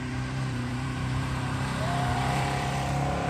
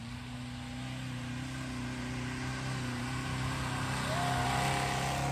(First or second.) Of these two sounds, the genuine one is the second